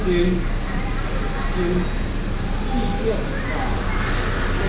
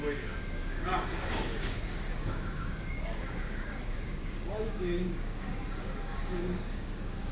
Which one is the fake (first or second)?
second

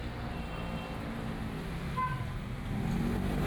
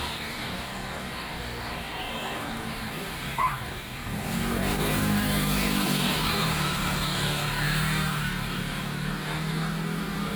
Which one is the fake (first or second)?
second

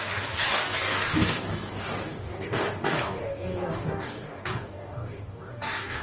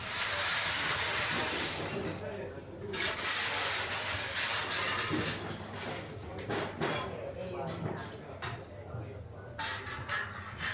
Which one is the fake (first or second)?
first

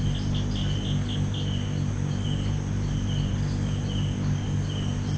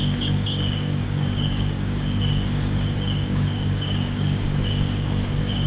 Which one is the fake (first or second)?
second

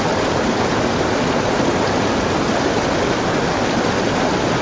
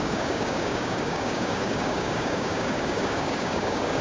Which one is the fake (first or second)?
second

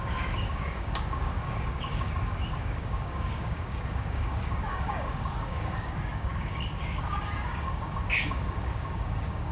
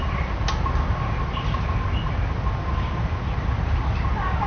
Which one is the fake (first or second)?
first